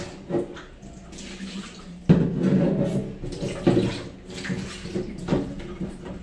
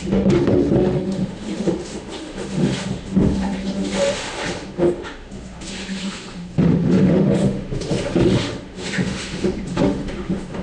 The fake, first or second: second